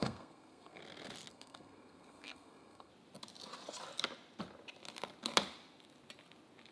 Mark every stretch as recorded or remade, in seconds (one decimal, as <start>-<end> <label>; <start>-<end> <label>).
0.0-0.8 remade; 0.8-1.3 recorded; 1.3-2.9 remade; 2.9-6.7 recorded